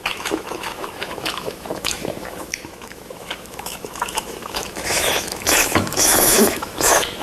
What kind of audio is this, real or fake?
fake